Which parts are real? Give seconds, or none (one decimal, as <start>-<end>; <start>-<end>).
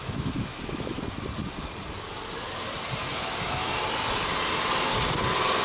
1.0-3.0; 3.7-5.6